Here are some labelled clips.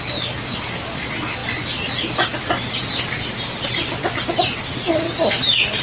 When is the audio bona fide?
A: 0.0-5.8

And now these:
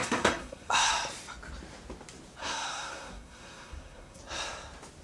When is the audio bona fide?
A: 0.9-2.4; 4.2-5.0

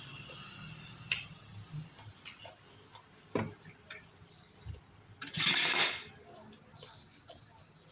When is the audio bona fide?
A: 0.0-7.9

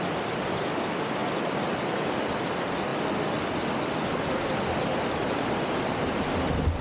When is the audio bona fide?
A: 0.0-6.8

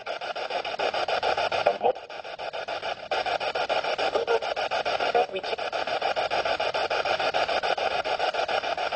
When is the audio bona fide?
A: 0.0-6.8; 7.9-9.0

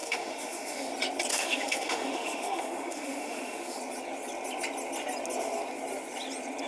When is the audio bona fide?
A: 0.9-1.3; 3.8-6.7

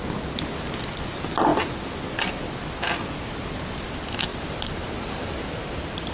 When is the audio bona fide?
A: 0.0-4.3

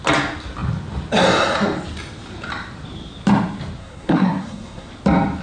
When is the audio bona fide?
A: 0.0-3.8; 4.9-5.4